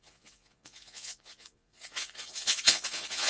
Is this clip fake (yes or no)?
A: yes